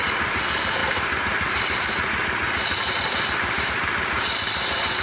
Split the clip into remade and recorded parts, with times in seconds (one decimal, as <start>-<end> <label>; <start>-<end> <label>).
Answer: 0.0-4.2 remade; 4.2-5.0 recorded